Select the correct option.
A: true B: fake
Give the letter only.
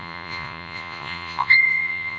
B